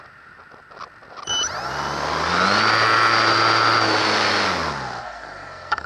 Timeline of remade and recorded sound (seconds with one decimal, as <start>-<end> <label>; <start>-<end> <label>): 0.0-5.0 recorded; 5.0-5.9 remade